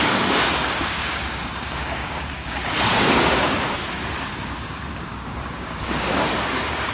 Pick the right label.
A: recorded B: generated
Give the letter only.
B